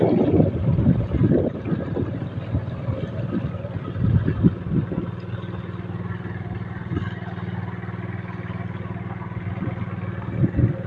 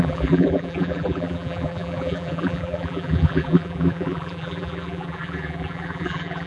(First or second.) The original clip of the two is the first